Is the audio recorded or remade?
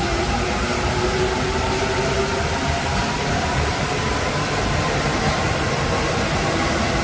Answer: recorded